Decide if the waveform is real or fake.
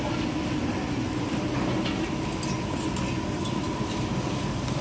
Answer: real